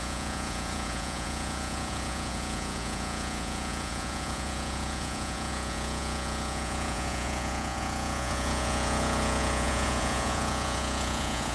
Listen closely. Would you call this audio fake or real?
fake